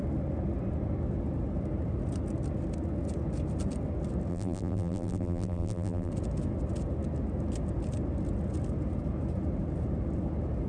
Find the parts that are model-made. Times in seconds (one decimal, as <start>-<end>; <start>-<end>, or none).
4.3-6.1